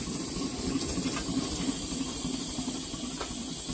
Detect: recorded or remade recorded